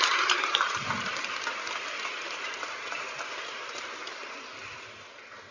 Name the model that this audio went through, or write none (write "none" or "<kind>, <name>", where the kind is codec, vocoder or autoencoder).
vocoder, BigVGAN v2